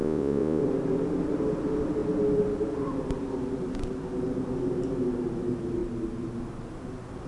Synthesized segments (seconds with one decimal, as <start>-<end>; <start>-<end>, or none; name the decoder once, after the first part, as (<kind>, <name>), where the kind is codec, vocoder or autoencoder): 0.0-0.6 (vocoder, Vocos)